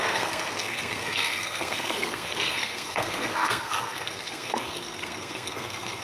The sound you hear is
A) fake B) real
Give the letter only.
A